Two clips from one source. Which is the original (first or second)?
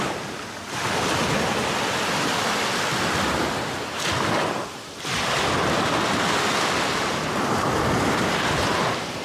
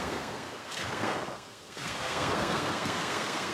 first